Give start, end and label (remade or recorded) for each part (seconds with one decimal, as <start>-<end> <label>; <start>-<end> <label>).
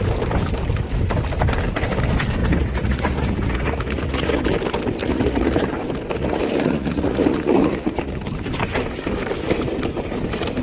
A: 0.0-2.4 recorded; 2.4-4.4 remade; 4.4-5.0 recorded; 5.0-5.7 remade; 5.7-6.2 recorded; 6.2-8.2 remade; 8.2-10.6 recorded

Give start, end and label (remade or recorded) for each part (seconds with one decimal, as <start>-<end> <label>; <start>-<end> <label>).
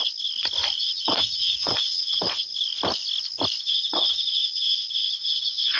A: 0.0-0.8 recorded; 0.8-2.5 remade; 2.5-3.6 recorded; 3.6-5.8 remade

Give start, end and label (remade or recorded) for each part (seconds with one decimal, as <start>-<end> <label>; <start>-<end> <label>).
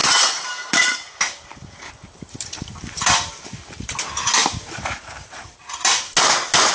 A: 0.0-3.3 remade; 3.3-4.4 recorded; 4.4-5.3 remade; 5.3-6.7 recorded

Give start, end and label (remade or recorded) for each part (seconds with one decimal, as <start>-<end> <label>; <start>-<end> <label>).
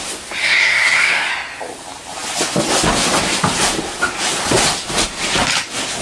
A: 0.0-0.4 recorded; 0.4-1.3 remade; 1.3-6.0 recorded